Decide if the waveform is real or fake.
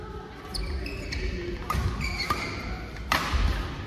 real